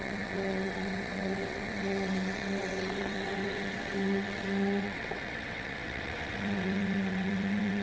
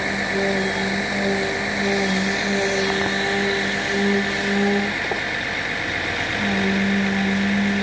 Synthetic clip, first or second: first